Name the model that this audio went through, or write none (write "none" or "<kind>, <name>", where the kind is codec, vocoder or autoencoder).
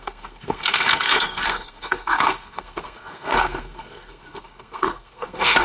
codec, SNAC